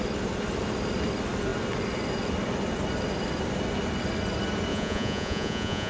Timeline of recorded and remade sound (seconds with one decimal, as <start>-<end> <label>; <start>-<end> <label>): 0.0-4.7 recorded; 4.7-5.9 remade